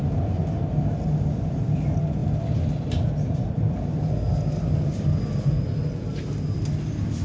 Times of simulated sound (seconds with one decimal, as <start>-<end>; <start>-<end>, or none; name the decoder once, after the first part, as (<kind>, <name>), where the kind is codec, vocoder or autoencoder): none